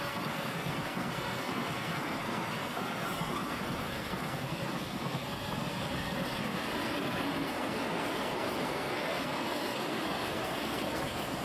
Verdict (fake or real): fake